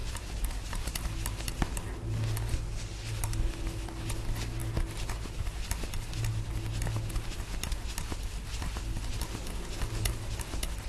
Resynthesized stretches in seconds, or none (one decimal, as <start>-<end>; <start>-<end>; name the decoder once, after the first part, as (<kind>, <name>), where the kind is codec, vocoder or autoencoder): 0.0-1.0 (vocoder, BigVGAN v2)